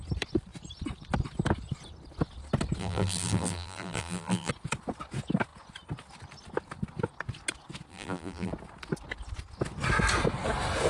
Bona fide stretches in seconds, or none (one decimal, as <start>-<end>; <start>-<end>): 0.0-2.8; 4.5-7.9; 8.5-10.9